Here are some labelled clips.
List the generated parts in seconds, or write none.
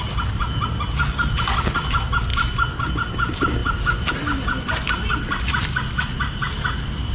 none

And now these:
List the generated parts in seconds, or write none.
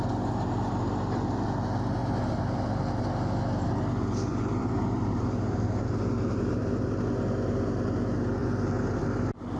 2.0-2.8 (vocoder, BigVGAN v2); 4.3-6.9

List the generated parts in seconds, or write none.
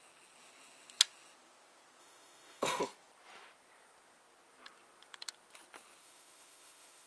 2.0-2.8 (autoencoder, DAC-VAE); 6.0-7.1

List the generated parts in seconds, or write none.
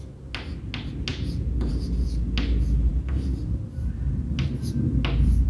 1.1-1.7 (vocoder, Vocos)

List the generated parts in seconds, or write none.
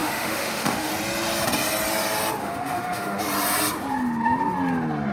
0.0-0.9 (autoencoder, DAC-VAE); 2.4-3.2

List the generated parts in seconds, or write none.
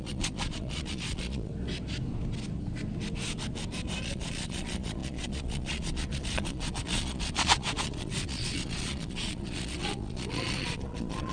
0.0-1.5 (vocoder, Vocos); 4.0-11.3